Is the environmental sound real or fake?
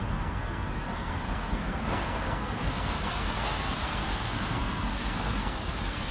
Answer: fake